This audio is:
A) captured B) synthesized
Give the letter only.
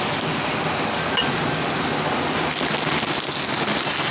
A